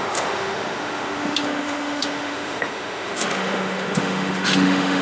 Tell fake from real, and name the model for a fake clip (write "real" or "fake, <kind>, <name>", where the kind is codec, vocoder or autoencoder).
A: fake, autoencoder, DAC-VAE